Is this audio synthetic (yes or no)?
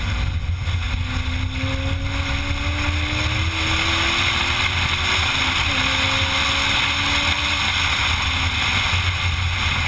no